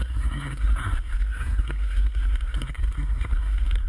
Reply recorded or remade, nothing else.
remade